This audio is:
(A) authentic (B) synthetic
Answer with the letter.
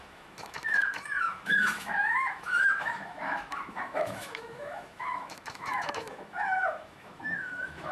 B